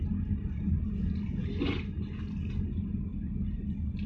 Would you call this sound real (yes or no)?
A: yes